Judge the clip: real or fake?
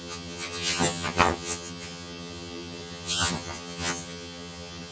fake